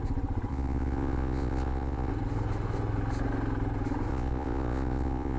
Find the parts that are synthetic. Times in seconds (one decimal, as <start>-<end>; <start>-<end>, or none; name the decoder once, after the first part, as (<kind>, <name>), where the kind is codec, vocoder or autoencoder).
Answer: 0.5-2.1 (vocoder, Vocos); 4.1-5.4